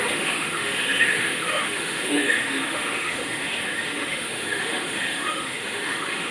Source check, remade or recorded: remade